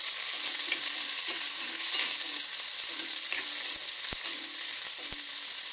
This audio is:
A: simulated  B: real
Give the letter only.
B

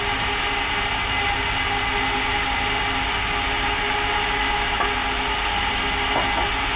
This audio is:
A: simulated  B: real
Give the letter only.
B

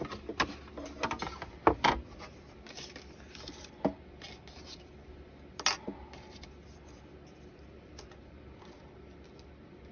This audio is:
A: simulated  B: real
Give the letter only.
B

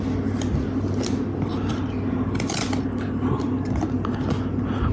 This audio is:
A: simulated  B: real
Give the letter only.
B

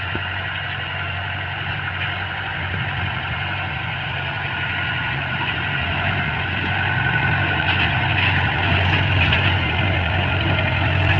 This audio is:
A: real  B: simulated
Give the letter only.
B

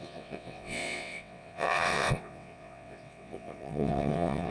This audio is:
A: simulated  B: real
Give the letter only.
A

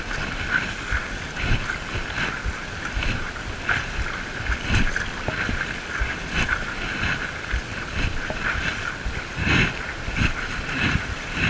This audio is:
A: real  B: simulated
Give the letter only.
A